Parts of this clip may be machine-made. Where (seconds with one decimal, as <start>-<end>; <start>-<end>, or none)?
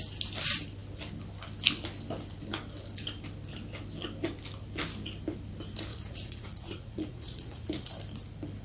5.9-7.9